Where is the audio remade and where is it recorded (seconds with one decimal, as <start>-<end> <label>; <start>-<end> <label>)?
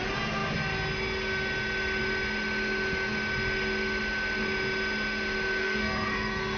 0.0-5.6 recorded; 5.6-6.6 remade